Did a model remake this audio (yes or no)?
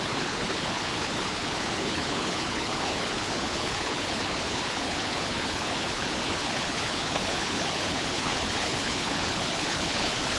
yes